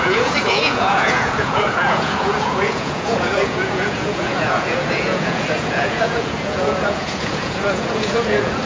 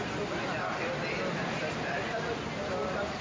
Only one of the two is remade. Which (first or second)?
first